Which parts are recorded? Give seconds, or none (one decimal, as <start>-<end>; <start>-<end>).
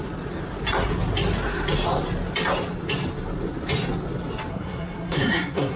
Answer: 0.0-4.5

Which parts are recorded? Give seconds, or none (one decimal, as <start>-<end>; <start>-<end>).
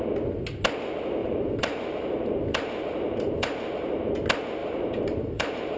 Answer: 0.0-1.2; 4.1-4.6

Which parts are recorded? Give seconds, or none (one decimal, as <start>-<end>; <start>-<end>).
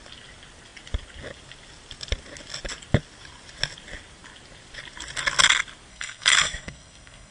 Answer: 0.0-5.9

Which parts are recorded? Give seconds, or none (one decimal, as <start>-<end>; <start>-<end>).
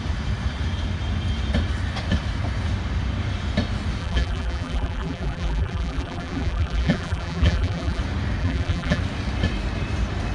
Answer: 0.0-4.0; 8.0-8.4; 9.0-10.3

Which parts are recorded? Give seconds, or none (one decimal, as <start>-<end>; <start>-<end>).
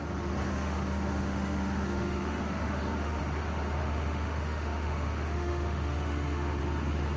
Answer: 0.0-0.5; 3.2-3.8; 6.6-7.2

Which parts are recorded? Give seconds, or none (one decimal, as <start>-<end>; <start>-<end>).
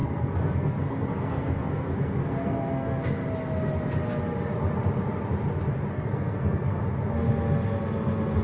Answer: 3.2-5.9; 6.8-8.4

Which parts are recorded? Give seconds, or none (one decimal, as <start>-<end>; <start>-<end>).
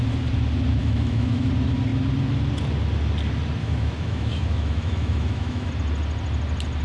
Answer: 0.0-0.8; 1.5-3.6; 5.7-6.8